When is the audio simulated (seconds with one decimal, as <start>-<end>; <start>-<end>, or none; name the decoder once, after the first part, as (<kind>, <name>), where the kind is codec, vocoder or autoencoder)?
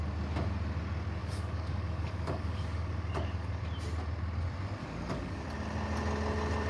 1.2-3.6 (codec, DAC); 4.8-5.4